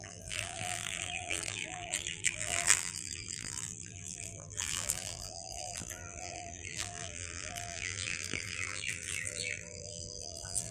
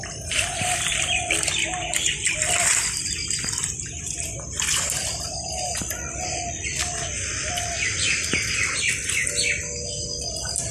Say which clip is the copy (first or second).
first